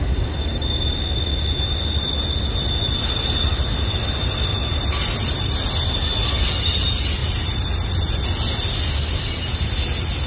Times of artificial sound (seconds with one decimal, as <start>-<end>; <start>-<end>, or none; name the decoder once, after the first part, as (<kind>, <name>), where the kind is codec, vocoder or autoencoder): none